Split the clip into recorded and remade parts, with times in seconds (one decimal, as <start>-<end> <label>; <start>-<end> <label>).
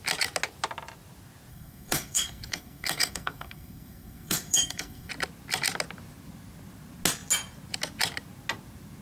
0.0-1.5 recorded; 1.5-5.1 remade; 5.1-9.0 recorded